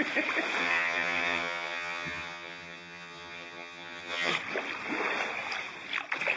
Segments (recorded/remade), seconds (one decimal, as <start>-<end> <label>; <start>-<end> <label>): 0.0-0.6 recorded; 0.6-4.3 remade; 4.3-6.4 recorded